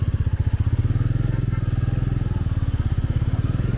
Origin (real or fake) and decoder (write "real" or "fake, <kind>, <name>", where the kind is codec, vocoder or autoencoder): real